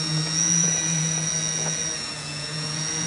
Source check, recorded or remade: remade